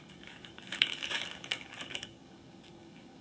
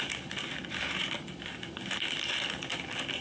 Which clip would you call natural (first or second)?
second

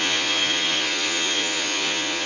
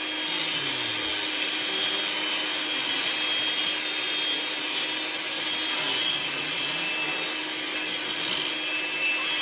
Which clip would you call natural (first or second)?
second